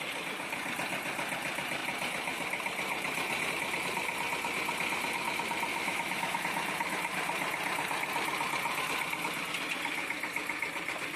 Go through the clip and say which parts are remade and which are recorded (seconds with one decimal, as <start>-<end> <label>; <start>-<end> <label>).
0.0-5.7 recorded; 5.7-6.4 remade; 6.4-11.2 recorded